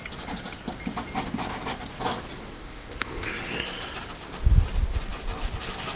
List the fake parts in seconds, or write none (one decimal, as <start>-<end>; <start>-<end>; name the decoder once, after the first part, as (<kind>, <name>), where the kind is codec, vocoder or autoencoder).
2.5-3.3 (codec, ZipCodec)